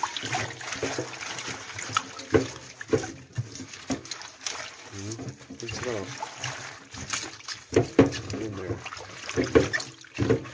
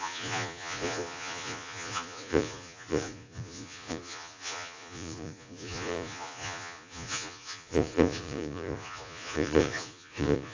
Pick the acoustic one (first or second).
first